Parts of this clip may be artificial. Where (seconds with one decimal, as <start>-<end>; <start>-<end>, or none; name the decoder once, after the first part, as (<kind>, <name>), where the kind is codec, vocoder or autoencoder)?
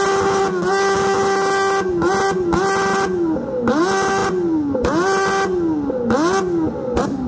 none